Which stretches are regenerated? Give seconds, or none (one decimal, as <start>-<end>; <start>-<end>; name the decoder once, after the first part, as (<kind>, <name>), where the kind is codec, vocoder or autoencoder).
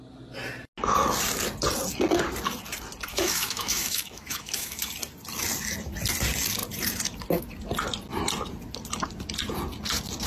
3.1-4.9 (autoencoder, DAC-VAE)